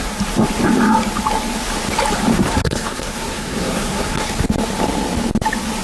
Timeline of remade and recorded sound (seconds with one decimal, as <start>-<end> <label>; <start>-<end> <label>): 0.0-2.3 recorded; 2.3-4.3 remade; 4.3-5.8 recorded